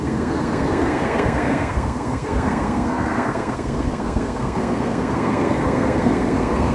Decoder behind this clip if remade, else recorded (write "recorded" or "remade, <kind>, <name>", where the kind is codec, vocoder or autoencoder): remade, codec, SNAC